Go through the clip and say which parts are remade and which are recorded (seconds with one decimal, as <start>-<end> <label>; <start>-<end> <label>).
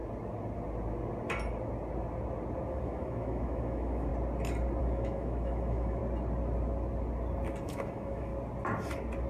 0.0-2.7 recorded; 2.7-4.1 remade; 4.1-4.8 recorded; 4.8-6.0 remade; 6.0-7.6 recorded; 7.6-8.3 remade; 8.3-9.3 recorded